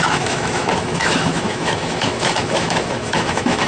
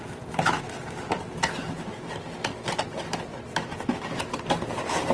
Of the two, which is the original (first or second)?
second